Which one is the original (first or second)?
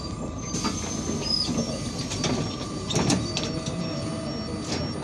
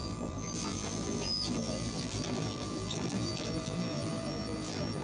first